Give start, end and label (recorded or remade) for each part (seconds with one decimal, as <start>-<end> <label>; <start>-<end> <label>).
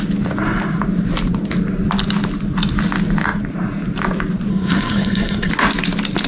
0.0-4.5 recorded; 4.5-5.5 remade; 5.5-6.3 recorded